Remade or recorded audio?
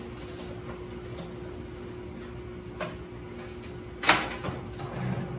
recorded